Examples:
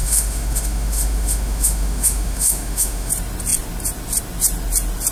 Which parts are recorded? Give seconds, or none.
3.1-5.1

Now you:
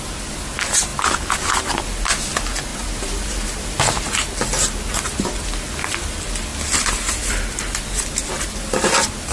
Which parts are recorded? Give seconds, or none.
0.0-6.5; 7.6-9.3

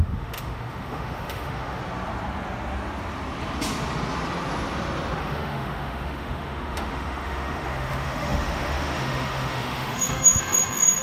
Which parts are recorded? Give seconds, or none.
1.8-5.2

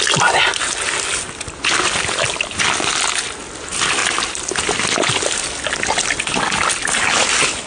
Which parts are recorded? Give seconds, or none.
0.0-7.7